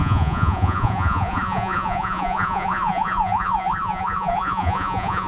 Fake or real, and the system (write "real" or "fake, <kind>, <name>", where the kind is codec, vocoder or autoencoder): fake, vocoder, Vocos